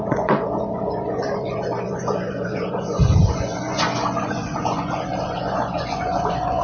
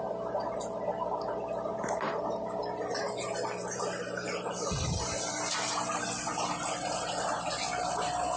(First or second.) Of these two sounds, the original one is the second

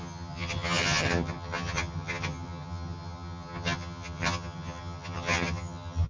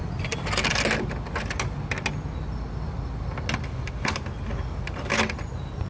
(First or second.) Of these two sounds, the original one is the second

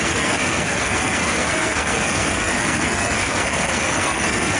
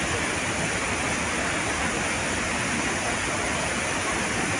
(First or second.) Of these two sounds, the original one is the second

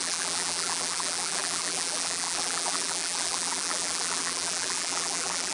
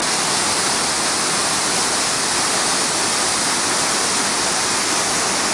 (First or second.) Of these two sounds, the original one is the second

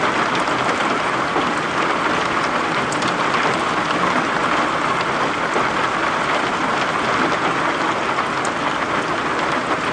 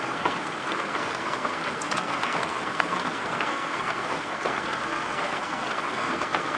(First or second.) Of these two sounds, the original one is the first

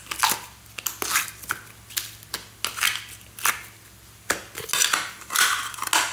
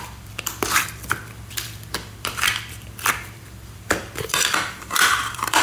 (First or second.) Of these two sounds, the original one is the first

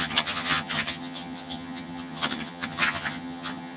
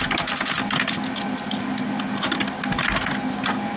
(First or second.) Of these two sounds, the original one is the second